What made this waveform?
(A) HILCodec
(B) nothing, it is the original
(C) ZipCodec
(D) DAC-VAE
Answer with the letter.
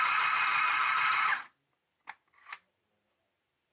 B